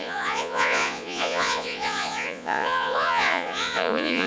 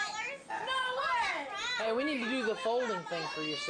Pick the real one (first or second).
second